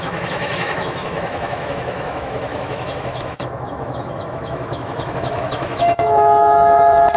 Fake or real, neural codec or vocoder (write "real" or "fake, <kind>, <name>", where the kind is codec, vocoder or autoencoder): fake, autoencoder, DAC-VAE